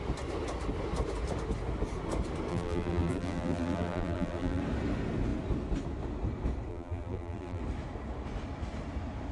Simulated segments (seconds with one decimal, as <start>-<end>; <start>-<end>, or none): 2.5-4.6; 6.7-7.6